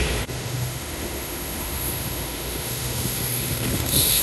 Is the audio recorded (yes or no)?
no